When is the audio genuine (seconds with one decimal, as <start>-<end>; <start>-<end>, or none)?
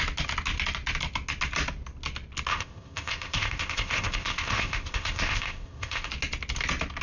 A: 0.0-2.5; 6.1-7.0